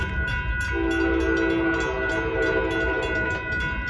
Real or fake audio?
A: real